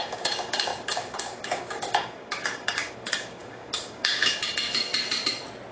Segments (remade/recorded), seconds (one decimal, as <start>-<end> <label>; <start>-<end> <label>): 0.0-4.9 remade; 4.9-5.7 recorded